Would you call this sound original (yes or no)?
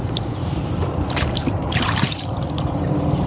no